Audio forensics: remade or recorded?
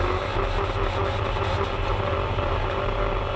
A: recorded